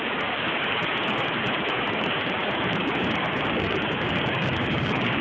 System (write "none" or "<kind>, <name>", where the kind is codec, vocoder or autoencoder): codec, DAC